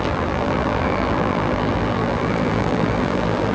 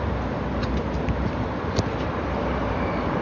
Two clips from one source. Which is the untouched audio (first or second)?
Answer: second